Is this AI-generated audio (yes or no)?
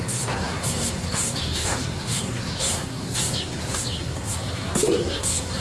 yes